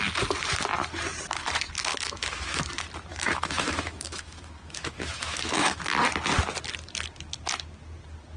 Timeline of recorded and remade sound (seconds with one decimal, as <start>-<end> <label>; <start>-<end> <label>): 0.0-1.9 recorded; 1.9-2.6 remade; 2.6-3.1 recorded; 3.1-5.8 remade; 5.8-8.4 recorded